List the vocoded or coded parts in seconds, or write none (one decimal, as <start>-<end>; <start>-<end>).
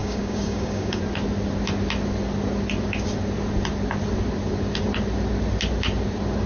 0.0-1.0